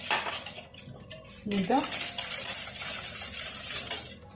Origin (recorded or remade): recorded